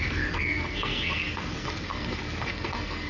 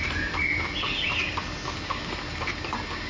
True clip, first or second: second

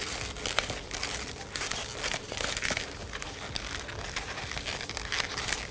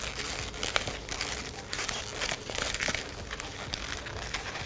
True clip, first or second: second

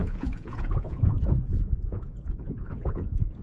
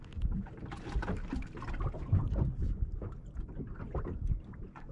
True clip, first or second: second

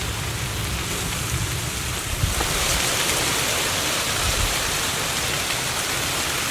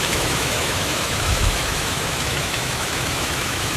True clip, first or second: first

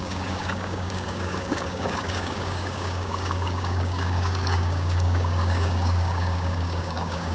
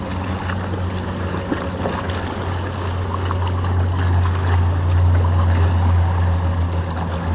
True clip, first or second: second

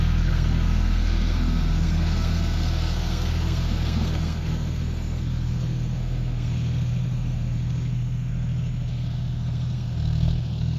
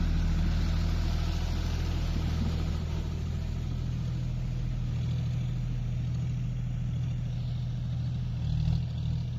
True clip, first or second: second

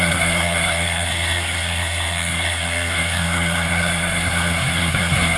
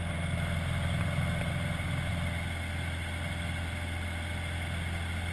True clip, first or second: second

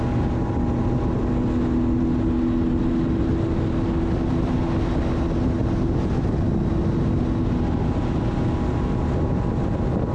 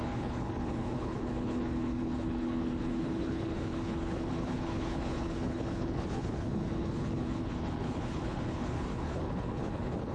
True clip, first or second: first